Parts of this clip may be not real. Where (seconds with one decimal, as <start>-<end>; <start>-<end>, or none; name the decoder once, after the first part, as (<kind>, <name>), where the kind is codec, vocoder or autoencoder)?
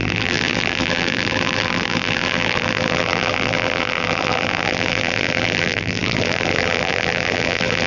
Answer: 0.0-7.9 (vocoder, BigVGAN v2)